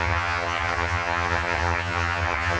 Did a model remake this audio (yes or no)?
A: yes